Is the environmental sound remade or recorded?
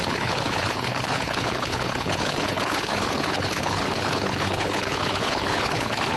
remade